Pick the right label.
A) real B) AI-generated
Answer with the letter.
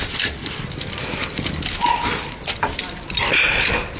A